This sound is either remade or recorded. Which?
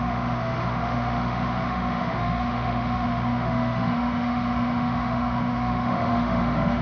remade